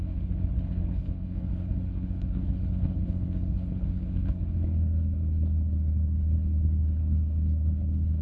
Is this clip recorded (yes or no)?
no